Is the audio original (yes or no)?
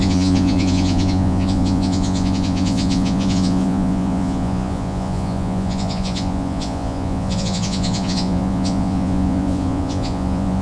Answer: no